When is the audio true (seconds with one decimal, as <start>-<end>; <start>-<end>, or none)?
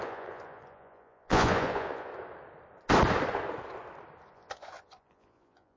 2.1-4.3